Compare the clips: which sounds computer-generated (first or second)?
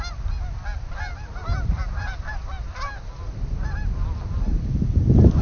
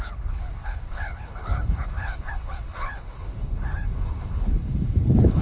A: second